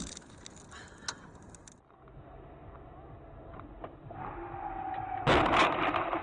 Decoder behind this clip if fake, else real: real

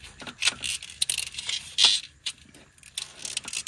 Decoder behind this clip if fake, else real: real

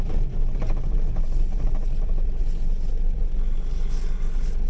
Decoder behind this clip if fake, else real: real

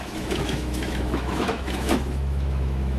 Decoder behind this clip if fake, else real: fake, autoencoder, DAC-VAE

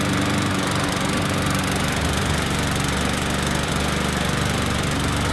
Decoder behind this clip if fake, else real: real